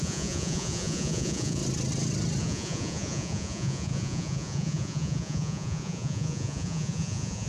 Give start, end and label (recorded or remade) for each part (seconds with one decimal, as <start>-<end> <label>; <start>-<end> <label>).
0.0-1.6 remade; 1.6-2.4 recorded; 2.4-7.5 remade